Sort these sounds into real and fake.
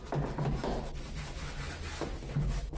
real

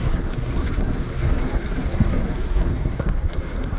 fake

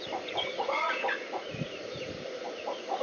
fake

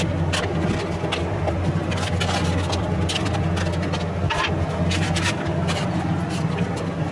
real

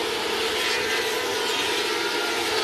real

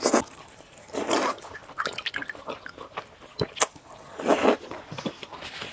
real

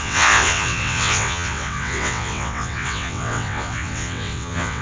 fake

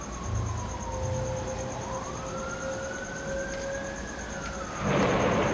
real